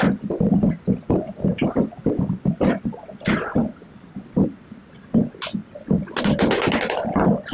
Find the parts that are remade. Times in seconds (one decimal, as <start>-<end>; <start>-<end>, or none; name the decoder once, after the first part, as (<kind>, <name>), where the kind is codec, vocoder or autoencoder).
none